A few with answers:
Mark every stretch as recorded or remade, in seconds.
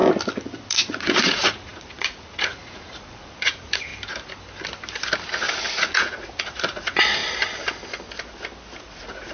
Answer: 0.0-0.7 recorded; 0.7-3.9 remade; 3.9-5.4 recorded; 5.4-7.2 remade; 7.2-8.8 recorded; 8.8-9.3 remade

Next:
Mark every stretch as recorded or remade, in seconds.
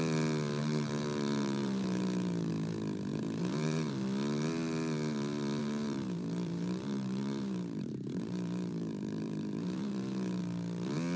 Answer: 0.0-0.6 recorded; 0.6-2.5 remade; 2.5-3.1 recorded; 3.1-3.9 remade; 3.9-5.6 recorded; 5.6-10.4 remade; 10.4-11.2 recorded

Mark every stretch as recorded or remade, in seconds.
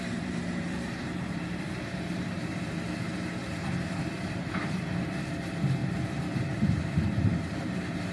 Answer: 0.0-8.1 remade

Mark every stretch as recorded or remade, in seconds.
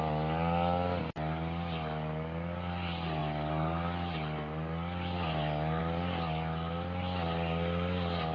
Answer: 0.0-8.3 recorded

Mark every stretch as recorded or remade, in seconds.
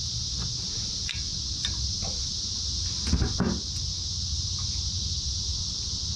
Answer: 0.0-6.2 recorded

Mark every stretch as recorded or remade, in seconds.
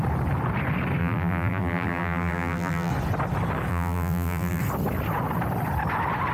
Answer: 0.0-1.0 recorded; 1.0-2.9 remade; 2.9-3.7 recorded; 3.7-4.6 remade; 4.6-6.3 recorded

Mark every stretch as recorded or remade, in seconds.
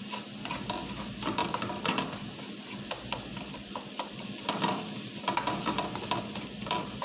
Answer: 0.0-7.0 recorded